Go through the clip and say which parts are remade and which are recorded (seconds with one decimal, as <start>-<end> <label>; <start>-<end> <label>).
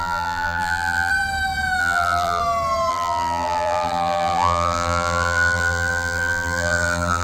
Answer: 0.0-1.1 remade; 1.1-1.8 recorded; 1.8-2.4 remade; 2.4-2.9 recorded; 2.9-7.2 remade